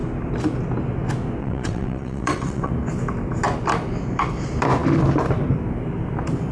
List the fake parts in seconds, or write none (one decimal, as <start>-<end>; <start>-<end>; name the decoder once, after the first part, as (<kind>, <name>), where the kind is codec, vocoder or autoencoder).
1.4-2.7 (vocoder, WaveNeXt)